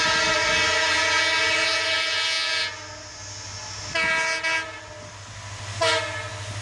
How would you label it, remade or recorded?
recorded